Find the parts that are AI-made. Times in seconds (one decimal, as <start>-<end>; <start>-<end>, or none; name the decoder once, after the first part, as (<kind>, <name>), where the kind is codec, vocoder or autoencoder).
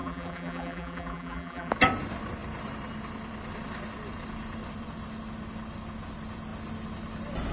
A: 0.0-1.7 (vocoder, BigVGAN v2)